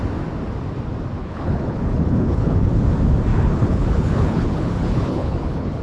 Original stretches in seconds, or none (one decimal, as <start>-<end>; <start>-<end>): 0.0-1.2; 2.7-3.3